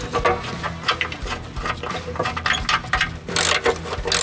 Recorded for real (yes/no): yes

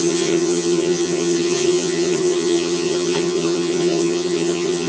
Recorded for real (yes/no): no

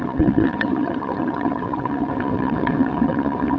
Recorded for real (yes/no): no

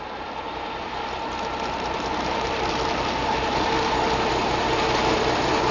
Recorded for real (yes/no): yes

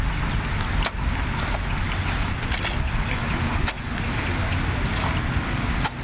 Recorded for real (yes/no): yes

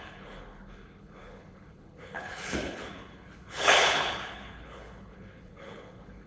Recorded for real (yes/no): no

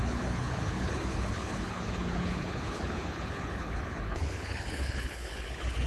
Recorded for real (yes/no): no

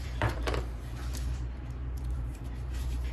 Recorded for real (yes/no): no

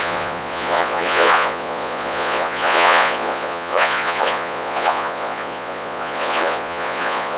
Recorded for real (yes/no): no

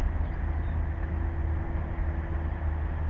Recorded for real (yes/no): yes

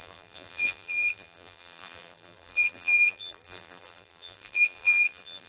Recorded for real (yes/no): no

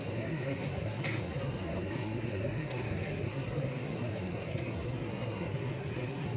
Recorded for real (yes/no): no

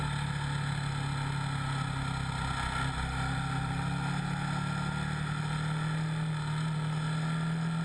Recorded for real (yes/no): yes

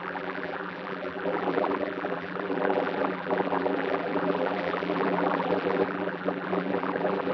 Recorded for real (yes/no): no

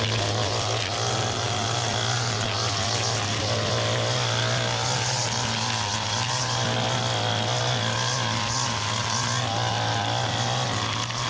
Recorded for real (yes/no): yes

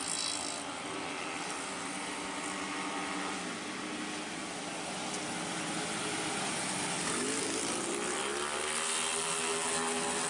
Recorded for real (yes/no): yes